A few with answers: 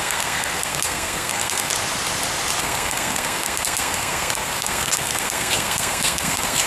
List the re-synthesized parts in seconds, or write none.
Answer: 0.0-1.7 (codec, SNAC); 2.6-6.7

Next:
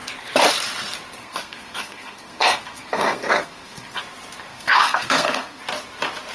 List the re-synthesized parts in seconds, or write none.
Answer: 1.2-4.0 (codec, SNAC); 4.5-5.6

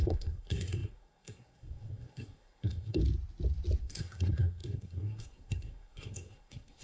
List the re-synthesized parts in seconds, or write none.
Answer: 0.0-3.0 (codec, SNAC); 3.8-6.8

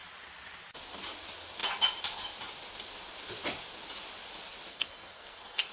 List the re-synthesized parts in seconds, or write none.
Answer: 4.7-5.7 (codec, SNAC)

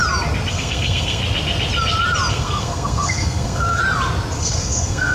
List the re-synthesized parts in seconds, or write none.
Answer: 0.5-1.2 (codec, SNAC); 2.3-3.8; 4.4-5.1

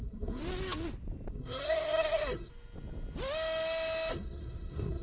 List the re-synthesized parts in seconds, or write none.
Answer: 0.0-0.4 (codec, SNAC); 1.3-2.5; 4.1-5.0